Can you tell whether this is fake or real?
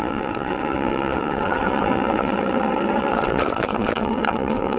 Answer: fake